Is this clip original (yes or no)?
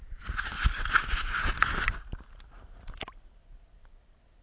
yes